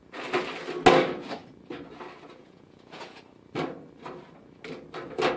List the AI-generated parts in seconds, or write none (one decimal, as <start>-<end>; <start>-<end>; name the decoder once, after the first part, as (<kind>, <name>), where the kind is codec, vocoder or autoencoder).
2.4-3.2 (vocoder, Vocos)